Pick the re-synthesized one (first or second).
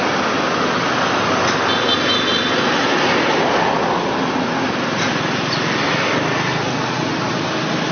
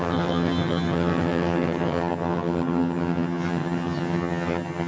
second